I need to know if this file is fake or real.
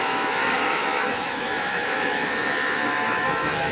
fake